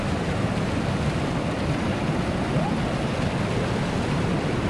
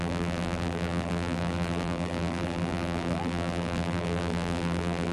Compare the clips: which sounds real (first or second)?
first